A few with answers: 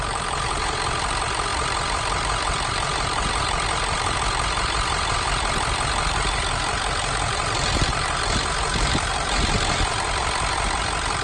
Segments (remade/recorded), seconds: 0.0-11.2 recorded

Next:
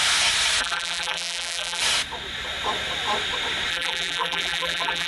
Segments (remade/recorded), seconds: 0.0-0.6 recorded; 0.6-1.8 remade; 1.8-3.7 recorded; 3.7-5.1 remade